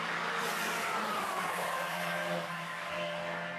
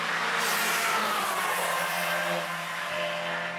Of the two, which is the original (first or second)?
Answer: second